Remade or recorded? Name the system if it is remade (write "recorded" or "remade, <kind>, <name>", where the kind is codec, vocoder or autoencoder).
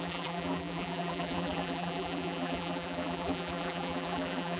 remade, vocoder, BigVGAN v2